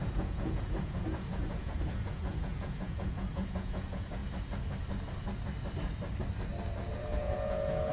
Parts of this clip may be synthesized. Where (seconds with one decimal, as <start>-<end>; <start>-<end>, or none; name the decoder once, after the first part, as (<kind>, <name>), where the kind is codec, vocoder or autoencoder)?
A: 0.0-4.2 (vocoder, Vocos); 6.9-7.9